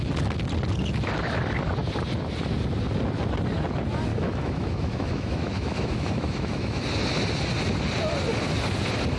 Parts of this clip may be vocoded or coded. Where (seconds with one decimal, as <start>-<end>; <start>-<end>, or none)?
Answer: 4.1-6.8